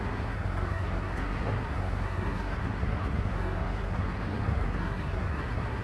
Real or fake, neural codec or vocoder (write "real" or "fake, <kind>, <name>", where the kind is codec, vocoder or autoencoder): fake, codec, SNAC